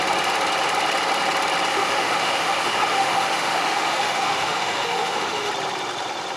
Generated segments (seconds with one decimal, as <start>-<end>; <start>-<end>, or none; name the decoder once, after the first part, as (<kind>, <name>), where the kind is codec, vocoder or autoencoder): 1.7-5.5 (autoencoder, DAC-VAE)